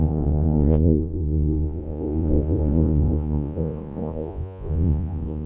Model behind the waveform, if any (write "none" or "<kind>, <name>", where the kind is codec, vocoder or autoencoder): vocoder, Vocos